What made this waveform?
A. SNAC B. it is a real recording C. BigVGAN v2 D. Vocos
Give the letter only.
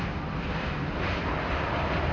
B